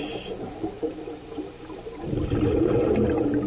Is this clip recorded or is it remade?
recorded